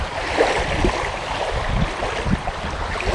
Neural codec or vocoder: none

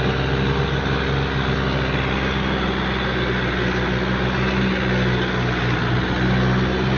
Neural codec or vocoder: none